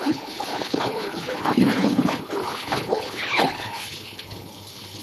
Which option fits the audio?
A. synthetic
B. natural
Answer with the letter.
A